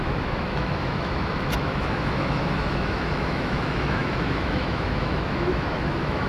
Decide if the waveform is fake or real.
fake